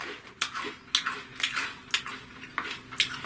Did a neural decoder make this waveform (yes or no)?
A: no